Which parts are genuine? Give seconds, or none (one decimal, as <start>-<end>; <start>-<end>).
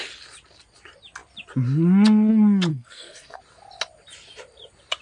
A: 0.0-2.7; 3.4-5.0